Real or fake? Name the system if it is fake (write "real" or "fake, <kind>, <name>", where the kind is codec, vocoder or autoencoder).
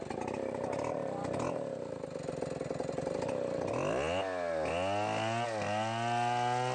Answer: real